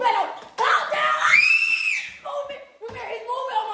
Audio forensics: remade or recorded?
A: recorded